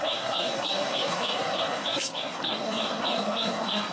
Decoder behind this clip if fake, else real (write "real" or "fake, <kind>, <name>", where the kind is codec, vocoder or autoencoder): fake, codec, SNAC